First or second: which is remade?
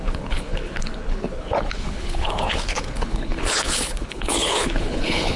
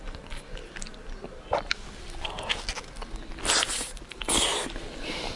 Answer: first